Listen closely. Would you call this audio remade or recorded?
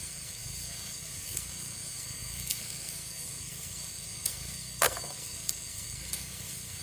remade